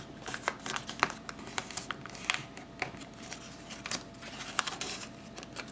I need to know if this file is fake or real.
real